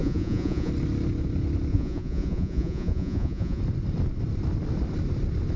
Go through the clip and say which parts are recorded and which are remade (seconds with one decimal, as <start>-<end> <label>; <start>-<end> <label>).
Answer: 0.0-0.7 remade; 0.7-1.7 recorded; 1.7-3.6 remade; 3.6-5.6 recorded